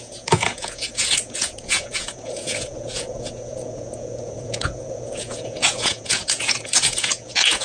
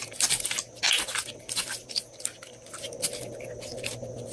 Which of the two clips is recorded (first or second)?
second